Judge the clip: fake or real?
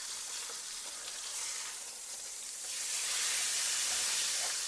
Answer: fake